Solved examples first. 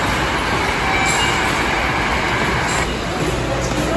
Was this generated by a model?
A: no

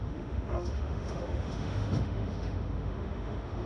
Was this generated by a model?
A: yes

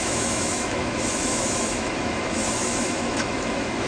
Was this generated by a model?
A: yes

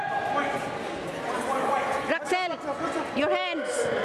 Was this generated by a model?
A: no